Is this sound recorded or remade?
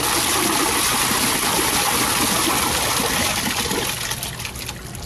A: recorded